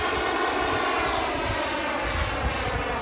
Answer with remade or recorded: recorded